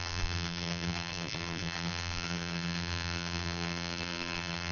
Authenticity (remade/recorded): remade